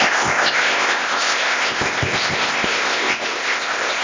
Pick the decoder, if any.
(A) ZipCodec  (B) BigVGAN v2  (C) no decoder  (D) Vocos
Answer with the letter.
A